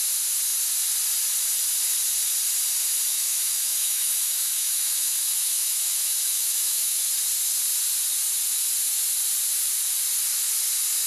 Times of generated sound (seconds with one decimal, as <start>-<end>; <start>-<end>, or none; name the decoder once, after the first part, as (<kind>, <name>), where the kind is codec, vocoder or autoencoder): 3.1-7.1 (autoencoder, DAC-VAE)